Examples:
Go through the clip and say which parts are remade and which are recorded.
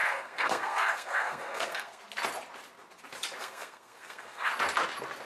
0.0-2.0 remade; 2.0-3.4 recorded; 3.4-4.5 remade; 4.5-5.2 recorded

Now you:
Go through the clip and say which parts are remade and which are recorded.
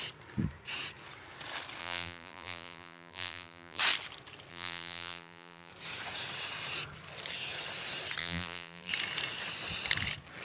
0.0-1.8 recorded; 1.8-3.8 remade; 3.8-4.5 recorded; 4.5-5.7 remade; 5.7-8.2 recorded; 8.2-8.9 remade; 8.9-10.4 recorded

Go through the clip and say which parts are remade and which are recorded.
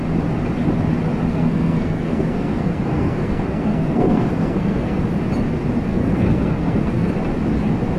0.0-1.3 recorded; 1.3-5.0 remade; 5.0-5.9 recorded; 5.9-7.1 remade; 7.1-8.0 recorded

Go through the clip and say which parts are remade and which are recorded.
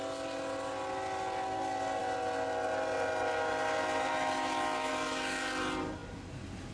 0.0-6.7 recorded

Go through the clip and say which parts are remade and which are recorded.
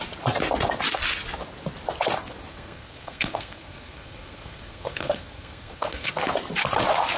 0.0-2.5 recorded; 2.5-6.1 remade; 6.1-7.2 recorded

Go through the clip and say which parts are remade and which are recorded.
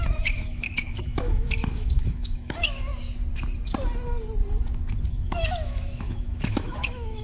0.0-2.9 remade; 2.9-5.1 recorded; 5.1-7.2 remade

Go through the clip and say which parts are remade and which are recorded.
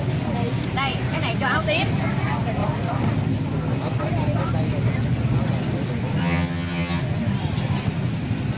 0.0-6.2 recorded; 6.2-7.0 remade; 7.0-8.6 recorded